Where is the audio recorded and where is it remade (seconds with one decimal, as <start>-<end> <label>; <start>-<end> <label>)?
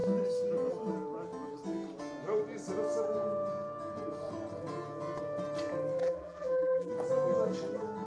0.0-6.0 recorded; 6.0-6.9 remade; 6.9-8.1 recorded